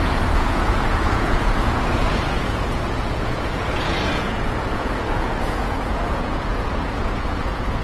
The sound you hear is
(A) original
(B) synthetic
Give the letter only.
B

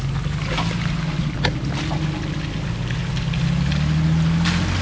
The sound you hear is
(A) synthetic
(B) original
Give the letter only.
B